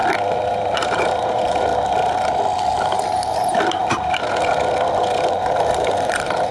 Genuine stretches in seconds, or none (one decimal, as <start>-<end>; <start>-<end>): 0.0-0.5; 1.7-2.6; 3.8-5.3